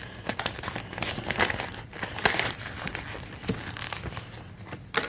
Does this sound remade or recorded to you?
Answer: recorded